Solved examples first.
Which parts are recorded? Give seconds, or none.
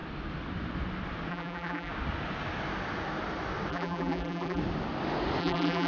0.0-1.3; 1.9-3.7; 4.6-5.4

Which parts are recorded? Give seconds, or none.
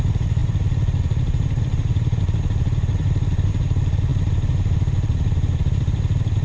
none